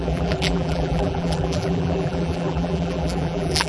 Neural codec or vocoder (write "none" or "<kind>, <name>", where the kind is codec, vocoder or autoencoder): vocoder, BigVGAN v2